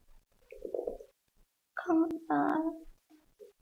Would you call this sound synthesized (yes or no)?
no